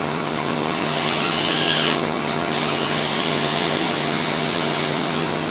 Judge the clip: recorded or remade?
remade